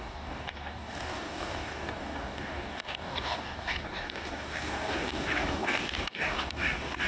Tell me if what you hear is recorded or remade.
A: remade